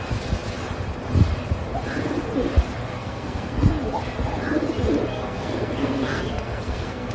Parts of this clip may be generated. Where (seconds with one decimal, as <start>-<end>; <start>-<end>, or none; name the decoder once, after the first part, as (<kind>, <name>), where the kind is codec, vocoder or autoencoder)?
2.9-3.7 (codec, SNAC); 5.1-7.1